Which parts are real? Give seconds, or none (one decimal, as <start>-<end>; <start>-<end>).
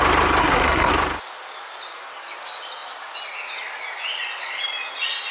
0.0-0.4; 0.9-5.3